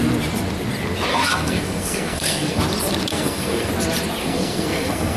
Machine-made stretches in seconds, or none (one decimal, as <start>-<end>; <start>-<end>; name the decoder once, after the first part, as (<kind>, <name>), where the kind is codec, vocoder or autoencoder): 1.1-2.6 (codec, SNAC); 3.1-3.7; 4.2-5.2